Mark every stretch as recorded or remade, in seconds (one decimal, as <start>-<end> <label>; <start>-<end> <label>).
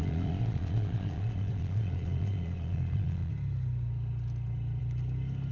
0.0-3.3 remade; 3.3-5.5 recorded